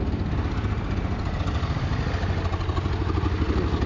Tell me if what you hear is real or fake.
real